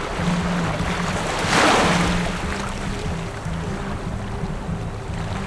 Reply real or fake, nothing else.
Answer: real